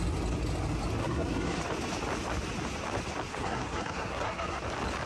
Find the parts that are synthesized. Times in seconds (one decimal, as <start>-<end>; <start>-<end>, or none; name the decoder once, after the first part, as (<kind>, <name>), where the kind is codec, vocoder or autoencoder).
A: 1.0-1.6 (codec, SNAC); 3.3-4.6